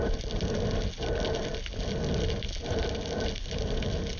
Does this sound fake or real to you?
real